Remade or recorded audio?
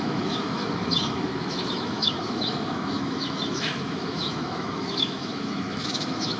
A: remade